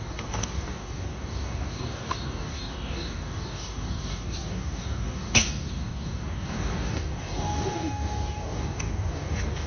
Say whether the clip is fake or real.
fake